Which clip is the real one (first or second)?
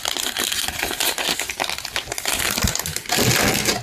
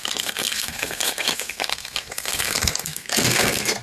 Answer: first